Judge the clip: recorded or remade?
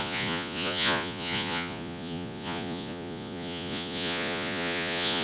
remade